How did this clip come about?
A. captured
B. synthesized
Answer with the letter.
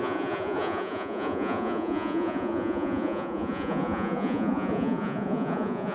B